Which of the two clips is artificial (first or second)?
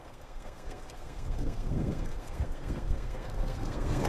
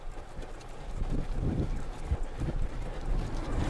first